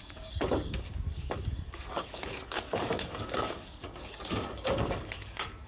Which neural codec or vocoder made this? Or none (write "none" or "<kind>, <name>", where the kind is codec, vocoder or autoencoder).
codec, DAC